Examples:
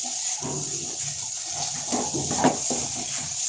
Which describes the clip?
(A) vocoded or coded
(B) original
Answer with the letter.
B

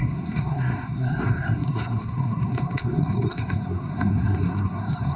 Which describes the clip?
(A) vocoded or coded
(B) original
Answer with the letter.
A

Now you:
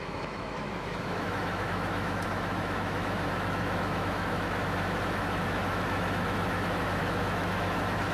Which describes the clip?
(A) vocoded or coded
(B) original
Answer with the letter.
A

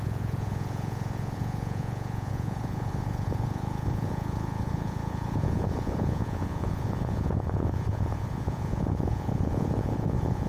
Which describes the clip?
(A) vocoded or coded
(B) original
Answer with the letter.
A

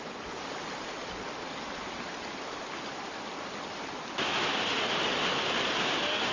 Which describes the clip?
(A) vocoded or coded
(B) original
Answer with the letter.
B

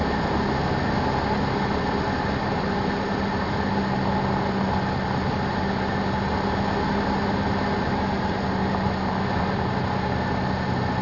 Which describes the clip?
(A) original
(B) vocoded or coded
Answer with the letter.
A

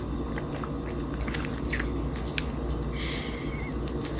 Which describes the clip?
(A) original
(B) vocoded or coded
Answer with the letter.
A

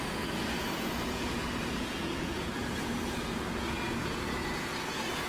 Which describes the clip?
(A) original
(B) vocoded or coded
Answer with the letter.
B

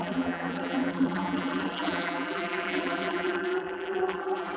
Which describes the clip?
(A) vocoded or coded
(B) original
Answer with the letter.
A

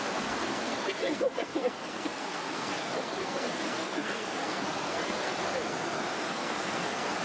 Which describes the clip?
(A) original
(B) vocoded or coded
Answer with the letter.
B